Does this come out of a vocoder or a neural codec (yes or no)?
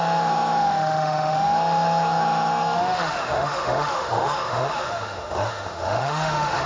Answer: yes